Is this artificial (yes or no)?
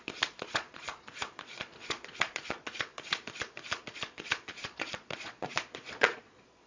yes